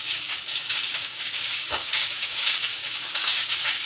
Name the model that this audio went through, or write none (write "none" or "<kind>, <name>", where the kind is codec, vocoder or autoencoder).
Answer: codec, DAC